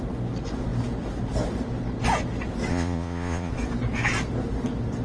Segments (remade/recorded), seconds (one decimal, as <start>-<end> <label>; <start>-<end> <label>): 0.0-2.7 recorded; 2.7-3.5 remade; 3.5-5.0 recorded